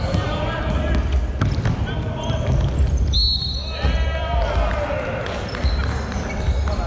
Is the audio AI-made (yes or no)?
no